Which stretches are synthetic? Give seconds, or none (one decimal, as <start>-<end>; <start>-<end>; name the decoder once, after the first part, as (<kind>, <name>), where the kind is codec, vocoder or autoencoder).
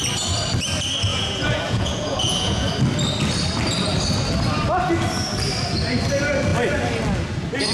1.1-2.7 (vocoder, Vocos)